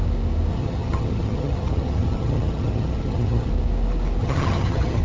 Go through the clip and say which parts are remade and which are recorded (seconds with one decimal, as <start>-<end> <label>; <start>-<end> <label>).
0.0-0.5 recorded; 0.5-3.5 remade; 3.5-4.2 recorded; 4.2-5.0 remade